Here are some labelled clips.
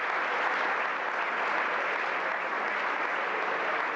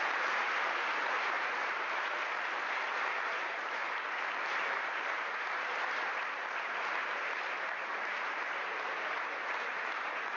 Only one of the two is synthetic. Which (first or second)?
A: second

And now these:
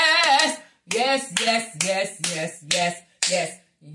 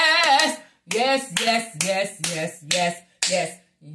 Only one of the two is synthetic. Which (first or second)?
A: first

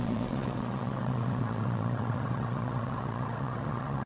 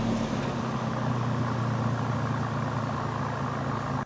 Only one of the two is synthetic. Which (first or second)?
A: first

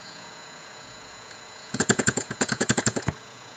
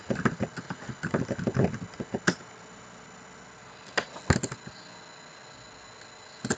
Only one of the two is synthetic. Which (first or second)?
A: first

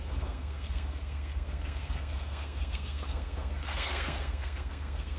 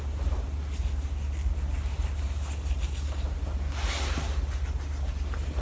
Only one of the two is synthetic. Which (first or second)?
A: first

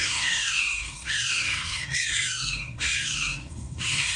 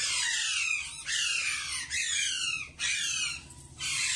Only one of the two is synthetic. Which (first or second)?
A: first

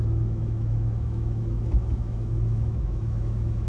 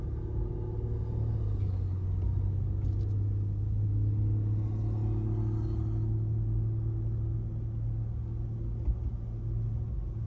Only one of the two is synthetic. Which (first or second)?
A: first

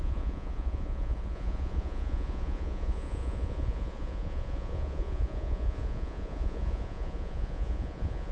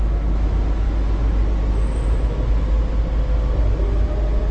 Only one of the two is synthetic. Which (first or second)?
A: first